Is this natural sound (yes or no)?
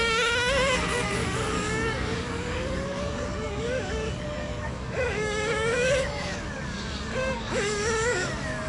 no